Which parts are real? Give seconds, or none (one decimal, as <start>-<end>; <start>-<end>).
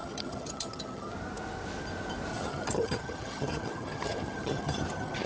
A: 1.1-2.3